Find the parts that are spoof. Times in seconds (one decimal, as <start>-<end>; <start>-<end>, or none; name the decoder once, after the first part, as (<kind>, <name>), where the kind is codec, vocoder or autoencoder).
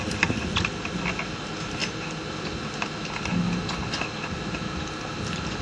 none